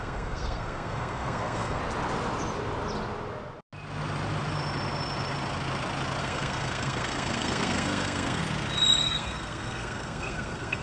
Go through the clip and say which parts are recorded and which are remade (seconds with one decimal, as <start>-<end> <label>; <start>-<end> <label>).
0.0-1.8 remade; 1.8-6.2 recorded; 6.2-8.4 remade; 8.4-9.0 recorded; 9.0-10.8 remade